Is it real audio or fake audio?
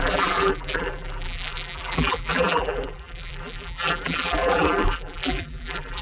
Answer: fake